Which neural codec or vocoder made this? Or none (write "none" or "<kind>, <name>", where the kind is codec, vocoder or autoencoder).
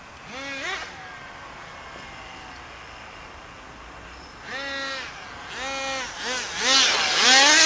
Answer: none